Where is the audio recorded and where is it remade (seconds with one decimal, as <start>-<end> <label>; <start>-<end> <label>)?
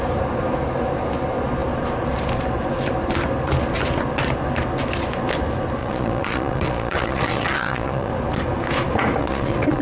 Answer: 0.0-5.8 recorded; 5.8-8.1 remade; 8.1-9.2 recorded; 9.2-9.8 remade